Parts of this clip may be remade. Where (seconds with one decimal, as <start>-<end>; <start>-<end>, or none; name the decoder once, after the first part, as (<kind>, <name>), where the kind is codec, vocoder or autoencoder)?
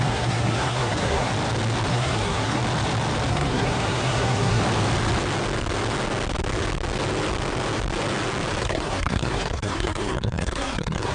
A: 0.0-1.3 (codec, SNAC); 1.9-2.6; 3.3-4.6; 8.6-11.1